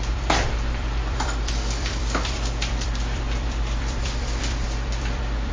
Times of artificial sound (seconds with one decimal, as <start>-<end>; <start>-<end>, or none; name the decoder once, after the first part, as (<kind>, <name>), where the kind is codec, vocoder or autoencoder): 0.0-5.5 (vocoder, BigVGAN v2)